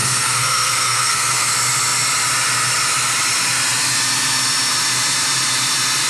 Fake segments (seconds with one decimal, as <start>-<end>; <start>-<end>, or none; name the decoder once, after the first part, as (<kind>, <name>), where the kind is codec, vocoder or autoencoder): 0.0-1.5 (codec, SNAC)